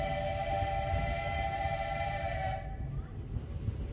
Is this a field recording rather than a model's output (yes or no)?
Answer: yes